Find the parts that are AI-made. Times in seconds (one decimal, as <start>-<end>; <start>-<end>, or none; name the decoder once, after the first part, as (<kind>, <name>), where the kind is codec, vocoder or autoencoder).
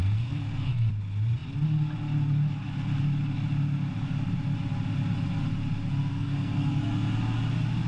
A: 0.0-0.9 (codec, SNAC); 6.1-6.7